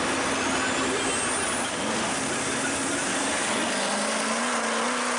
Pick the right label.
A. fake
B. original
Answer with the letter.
B